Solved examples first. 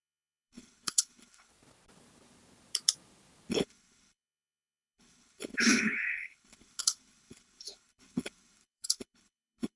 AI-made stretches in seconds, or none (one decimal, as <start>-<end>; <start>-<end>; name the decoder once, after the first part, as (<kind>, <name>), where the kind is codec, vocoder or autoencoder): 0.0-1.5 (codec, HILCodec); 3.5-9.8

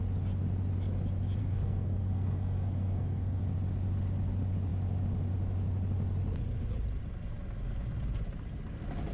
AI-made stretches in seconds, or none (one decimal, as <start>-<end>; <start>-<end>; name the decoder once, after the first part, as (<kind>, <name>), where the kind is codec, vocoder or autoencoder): 1.4-3.4 (codec, SNAC)

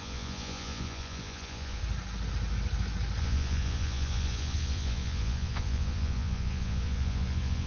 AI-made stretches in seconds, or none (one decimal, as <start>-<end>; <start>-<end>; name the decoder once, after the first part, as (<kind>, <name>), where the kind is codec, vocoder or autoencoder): 0.0-1.8 (vocoder, Vocos); 3.2-7.7

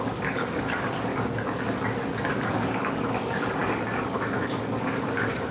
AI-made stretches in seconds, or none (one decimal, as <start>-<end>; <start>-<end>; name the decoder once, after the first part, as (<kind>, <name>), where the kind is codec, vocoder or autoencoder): 0.0-1.1 (codec, DAC); 2.5-5.5